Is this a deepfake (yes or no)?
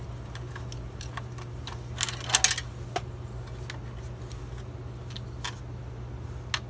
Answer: no